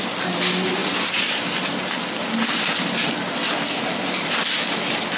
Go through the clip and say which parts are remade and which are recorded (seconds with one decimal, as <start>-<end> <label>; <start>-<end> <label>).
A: 0.0-5.2 recorded